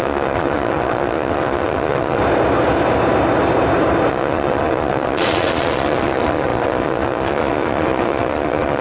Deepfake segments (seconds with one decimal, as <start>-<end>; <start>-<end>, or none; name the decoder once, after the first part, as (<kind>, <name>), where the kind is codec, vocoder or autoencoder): 0.0-2.2 (vocoder, Vocos); 4.1-8.8